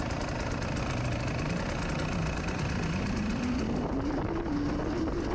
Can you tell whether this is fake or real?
real